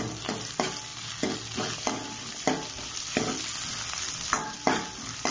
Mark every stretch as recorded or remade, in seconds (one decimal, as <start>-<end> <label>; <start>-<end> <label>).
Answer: 0.0-5.3 recorded